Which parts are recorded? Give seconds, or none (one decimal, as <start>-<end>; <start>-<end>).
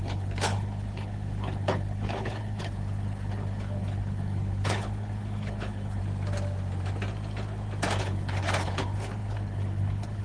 6.0-8.0